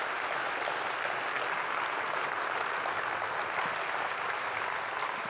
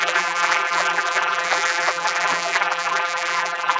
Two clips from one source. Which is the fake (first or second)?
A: second